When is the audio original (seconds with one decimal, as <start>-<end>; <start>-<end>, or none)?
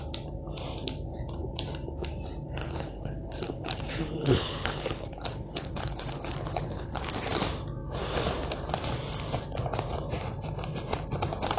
0.0-2.6; 7.1-11.6